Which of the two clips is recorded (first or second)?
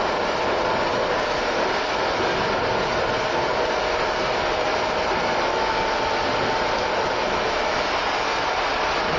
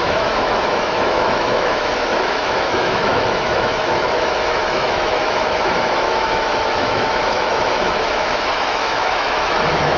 first